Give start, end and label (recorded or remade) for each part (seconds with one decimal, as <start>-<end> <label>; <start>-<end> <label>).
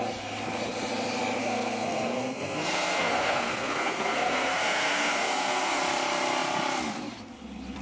0.0-1.4 recorded; 1.4-5.8 remade; 5.8-7.8 recorded